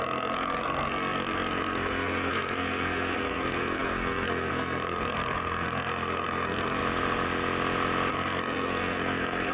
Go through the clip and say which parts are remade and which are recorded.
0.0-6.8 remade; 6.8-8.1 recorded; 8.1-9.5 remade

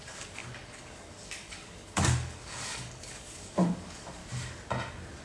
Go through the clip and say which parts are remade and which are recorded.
0.0-4.2 remade; 4.2-5.2 recorded

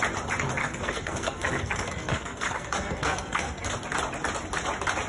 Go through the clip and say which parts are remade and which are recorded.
0.0-0.6 recorded; 0.6-3.7 remade; 3.7-5.1 recorded

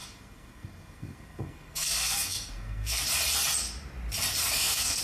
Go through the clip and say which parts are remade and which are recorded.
0.0-3.0 remade; 3.0-4.4 recorded; 4.4-5.0 remade